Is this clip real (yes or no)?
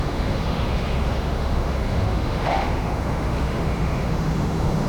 no